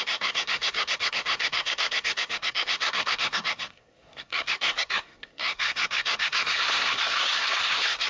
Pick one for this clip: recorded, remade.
remade